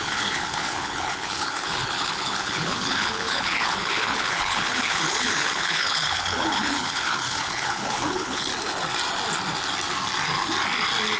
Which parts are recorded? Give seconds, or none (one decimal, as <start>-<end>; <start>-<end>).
8.5-11.2